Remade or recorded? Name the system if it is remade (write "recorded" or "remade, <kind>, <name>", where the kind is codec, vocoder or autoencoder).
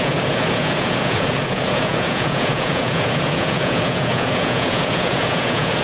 remade, vocoder, Vocos